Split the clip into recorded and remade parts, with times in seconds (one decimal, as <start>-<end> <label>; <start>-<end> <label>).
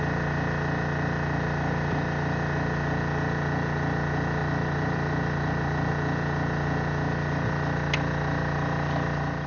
0.0-4.4 recorded; 4.4-5.9 remade; 5.9-9.5 recorded